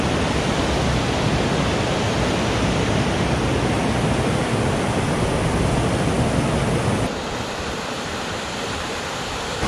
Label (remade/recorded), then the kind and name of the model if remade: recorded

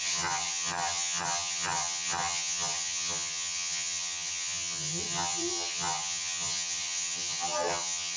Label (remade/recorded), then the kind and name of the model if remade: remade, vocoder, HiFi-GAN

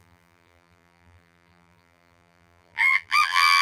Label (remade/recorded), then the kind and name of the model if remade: remade, vocoder, BigVGAN v2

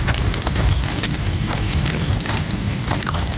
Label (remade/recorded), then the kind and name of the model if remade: remade, codec, DAC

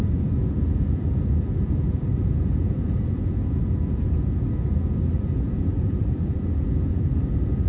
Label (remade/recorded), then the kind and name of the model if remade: remade, vocoder, Vocos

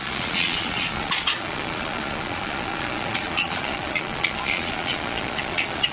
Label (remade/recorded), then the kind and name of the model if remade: remade, vocoder, Vocos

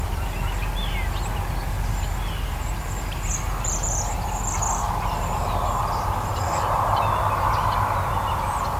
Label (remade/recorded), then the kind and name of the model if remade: remade, vocoder, BigVGAN v2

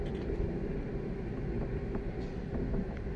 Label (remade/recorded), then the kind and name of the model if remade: recorded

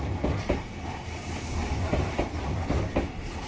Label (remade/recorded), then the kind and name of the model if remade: recorded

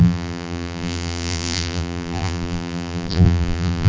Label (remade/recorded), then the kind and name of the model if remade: remade, vocoder, BigVGAN v2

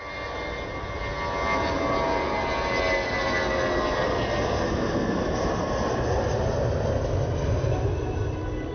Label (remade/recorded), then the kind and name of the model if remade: recorded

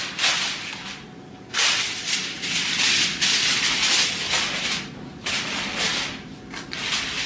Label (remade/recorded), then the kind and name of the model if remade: recorded